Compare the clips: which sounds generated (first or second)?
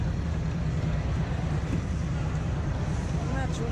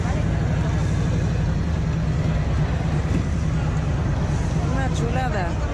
first